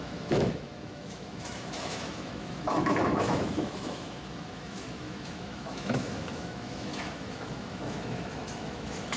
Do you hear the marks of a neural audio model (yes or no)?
yes